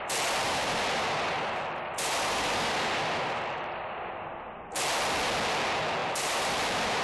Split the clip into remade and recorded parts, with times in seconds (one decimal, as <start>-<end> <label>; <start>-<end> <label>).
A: 0.0-0.4 recorded; 0.4-4.6 remade; 4.6-6.0 recorded; 6.0-7.0 remade